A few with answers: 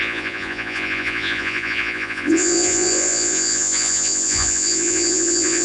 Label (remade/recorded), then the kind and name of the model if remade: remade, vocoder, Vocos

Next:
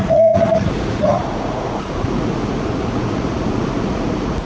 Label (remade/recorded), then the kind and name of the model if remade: remade, vocoder, Vocos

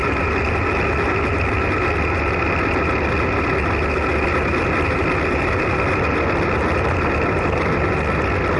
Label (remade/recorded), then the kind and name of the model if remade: recorded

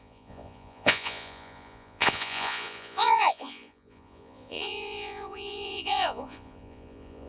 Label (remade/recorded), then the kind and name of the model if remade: remade, vocoder, Vocos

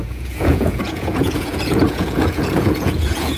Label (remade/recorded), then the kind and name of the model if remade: remade, vocoder, Vocos